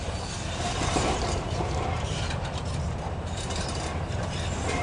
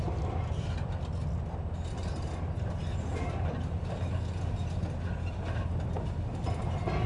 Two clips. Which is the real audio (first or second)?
second